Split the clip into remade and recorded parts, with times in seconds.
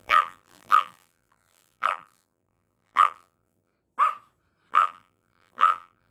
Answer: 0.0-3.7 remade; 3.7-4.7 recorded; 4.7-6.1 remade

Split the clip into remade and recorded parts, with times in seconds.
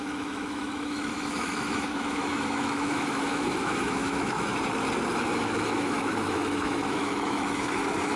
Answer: 0.0-4.5 remade; 4.5-5.1 recorded; 5.1-8.2 remade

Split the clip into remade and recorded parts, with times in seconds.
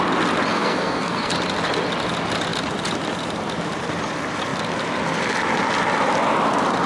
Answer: 0.0-0.5 recorded; 0.5-1.3 remade; 1.3-6.9 recorded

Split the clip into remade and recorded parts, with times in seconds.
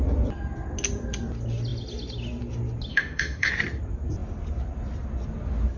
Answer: 0.0-2.9 recorded; 2.9-3.5 remade; 3.5-5.8 recorded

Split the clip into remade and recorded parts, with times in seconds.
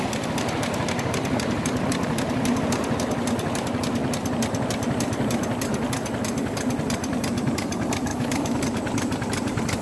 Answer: 0.0-8.1 recorded; 8.1-8.6 remade; 8.6-9.8 recorded